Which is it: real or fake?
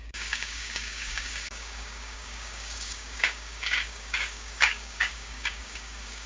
fake